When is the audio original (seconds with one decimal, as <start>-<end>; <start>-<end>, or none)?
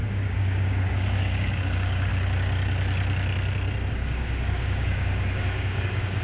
2.1-3.9